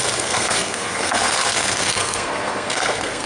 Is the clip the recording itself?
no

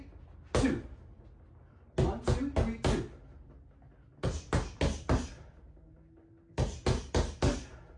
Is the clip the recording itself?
yes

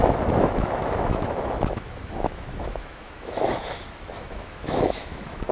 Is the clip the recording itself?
no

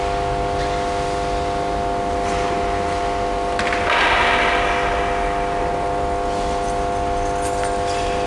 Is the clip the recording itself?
yes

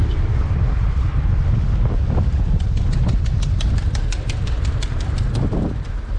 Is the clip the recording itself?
yes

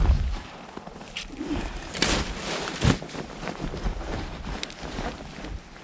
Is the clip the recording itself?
yes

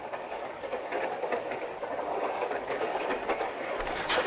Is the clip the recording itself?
no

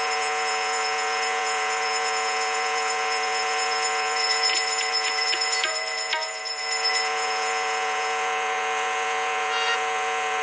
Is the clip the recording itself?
no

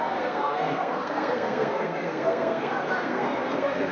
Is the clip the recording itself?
no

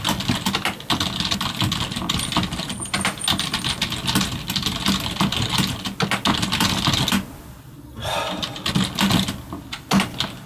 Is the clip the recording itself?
yes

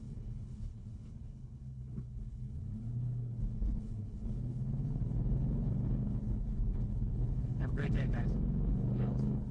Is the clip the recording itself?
no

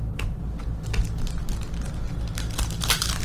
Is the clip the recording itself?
yes